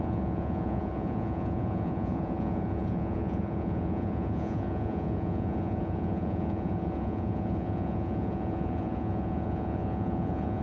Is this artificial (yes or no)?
yes